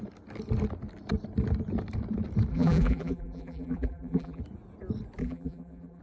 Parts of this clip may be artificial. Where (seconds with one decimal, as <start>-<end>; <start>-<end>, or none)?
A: 2.5-4.4; 5.2-6.0